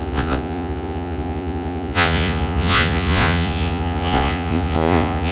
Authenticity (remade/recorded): remade